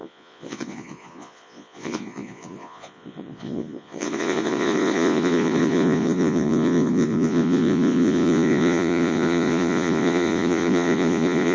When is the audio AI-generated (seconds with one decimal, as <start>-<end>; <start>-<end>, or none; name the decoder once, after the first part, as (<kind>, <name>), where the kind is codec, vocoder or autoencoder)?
0.0-11.5 (vocoder, Vocos)